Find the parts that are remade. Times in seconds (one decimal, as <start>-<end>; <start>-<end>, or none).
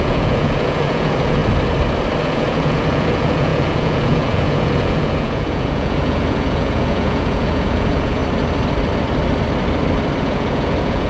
0.0-1.4; 2.2-8.2; 10.2-11.1